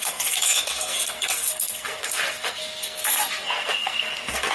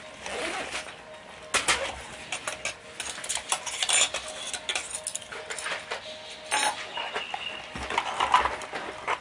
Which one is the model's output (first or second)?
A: first